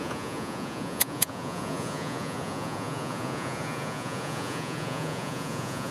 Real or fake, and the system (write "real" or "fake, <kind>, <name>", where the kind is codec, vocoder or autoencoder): fake, vocoder, Vocos